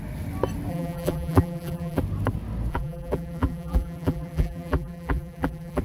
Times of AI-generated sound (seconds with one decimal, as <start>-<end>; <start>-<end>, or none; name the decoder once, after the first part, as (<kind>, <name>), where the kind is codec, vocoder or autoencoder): 0.7-2.0 (vocoder, BigVGAN v2); 2.7-5.8